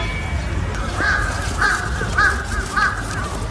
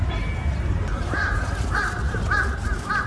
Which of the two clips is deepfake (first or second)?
second